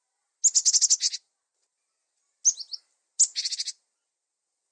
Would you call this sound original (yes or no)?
yes